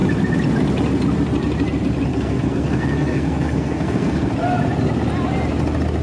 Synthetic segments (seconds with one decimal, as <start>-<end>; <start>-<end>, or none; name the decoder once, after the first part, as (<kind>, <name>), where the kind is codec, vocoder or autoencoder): 2.1-4.3 (codec, SNAC)